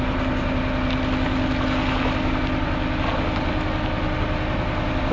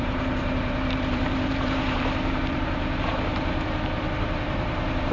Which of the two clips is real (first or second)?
first